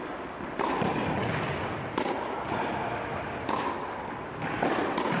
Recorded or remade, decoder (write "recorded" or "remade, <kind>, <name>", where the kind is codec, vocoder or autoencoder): recorded